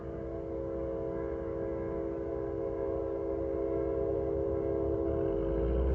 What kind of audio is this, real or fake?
real